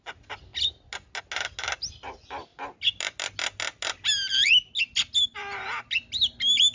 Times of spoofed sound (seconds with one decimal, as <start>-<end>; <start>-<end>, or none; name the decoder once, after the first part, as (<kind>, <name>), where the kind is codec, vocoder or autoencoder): none